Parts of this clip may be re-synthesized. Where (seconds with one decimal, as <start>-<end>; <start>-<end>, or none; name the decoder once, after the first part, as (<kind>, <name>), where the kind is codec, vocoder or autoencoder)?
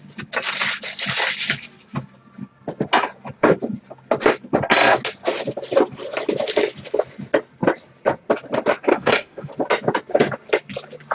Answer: 8.9-9.5 (autoencoder, DAC-VAE)